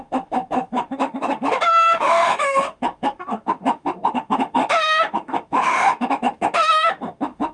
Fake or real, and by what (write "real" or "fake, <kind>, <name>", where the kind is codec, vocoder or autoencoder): fake, autoencoder, DAC-VAE